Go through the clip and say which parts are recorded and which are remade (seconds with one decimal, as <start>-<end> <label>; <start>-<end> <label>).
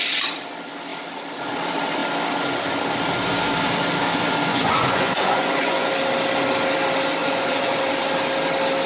0.0-4.5 recorded; 4.5-5.9 remade; 5.9-7.2 recorded; 7.2-7.9 remade; 7.9-8.9 recorded